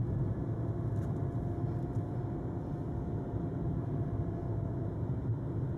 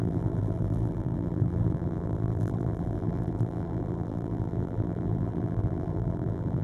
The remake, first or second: second